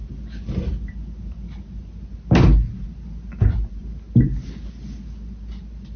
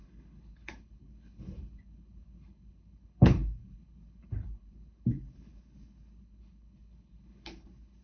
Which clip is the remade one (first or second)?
second